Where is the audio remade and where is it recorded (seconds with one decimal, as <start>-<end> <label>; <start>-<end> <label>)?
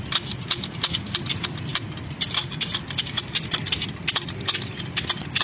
0.0-5.4 recorded